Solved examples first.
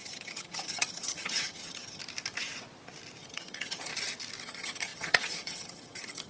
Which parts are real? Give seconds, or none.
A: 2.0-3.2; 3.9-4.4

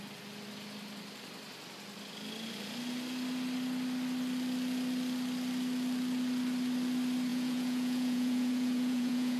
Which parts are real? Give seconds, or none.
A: 0.0-7.3

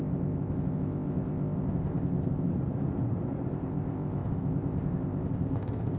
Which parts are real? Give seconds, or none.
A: 2.5-3.5

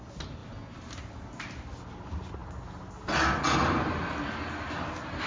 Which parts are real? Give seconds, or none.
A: 0.0-5.3

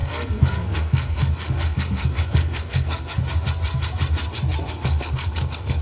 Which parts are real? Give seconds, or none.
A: 3.2-4.7

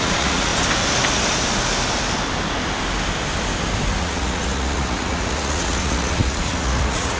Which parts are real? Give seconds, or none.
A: 0.5-4.0

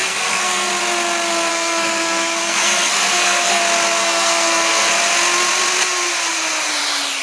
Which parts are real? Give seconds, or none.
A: 0.7-1.5; 3.6-4.0; 4.9-7.2